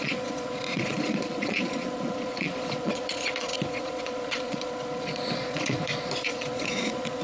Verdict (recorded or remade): remade